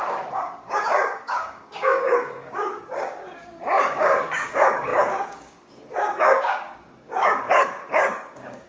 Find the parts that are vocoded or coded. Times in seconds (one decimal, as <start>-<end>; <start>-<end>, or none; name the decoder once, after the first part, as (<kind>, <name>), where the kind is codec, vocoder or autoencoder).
0.0-8.7 (codec, DAC)